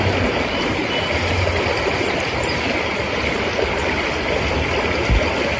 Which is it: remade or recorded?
recorded